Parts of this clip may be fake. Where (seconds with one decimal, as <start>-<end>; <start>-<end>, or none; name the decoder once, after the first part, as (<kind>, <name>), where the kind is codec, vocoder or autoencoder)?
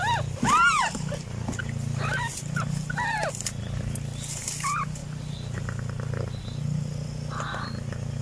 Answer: none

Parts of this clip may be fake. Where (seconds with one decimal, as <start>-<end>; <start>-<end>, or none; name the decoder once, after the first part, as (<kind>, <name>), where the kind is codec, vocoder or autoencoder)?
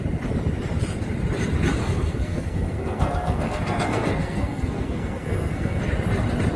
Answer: 1.8-5.8 (codec, SNAC)